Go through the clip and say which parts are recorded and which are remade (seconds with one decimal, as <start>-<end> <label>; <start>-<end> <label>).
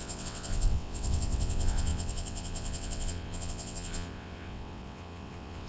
0.0-5.7 remade